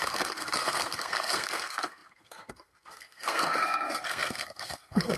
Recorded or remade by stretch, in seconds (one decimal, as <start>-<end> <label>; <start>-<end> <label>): 0.0-5.2 remade